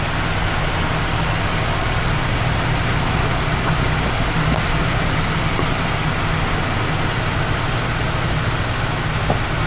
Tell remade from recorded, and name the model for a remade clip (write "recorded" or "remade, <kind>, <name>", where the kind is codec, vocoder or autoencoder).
recorded